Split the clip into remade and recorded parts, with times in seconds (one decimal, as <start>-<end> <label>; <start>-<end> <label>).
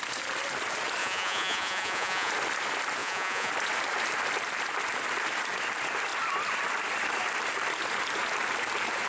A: 0.0-1.0 recorded; 1.0-2.3 remade; 2.3-3.0 recorded; 3.0-3.5 remade; 3.5-9.1 recorded